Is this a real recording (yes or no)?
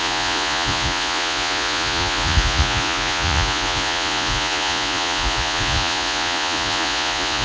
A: no